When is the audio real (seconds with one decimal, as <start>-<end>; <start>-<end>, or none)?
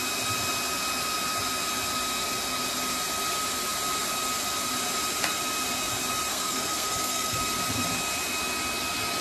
0.0-6.3; 7.4-9.2